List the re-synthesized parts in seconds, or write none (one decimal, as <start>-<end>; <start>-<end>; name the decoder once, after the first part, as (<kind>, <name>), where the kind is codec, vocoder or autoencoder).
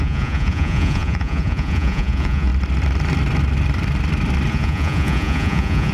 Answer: 0.0-2.5 (vocoder, Vocos); 4.5-5.9